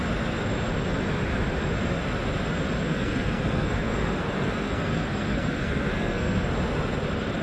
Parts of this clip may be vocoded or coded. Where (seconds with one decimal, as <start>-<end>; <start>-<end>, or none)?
2.8-6.5